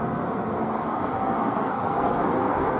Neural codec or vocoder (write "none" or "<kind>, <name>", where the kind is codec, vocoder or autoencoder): codec, SNAC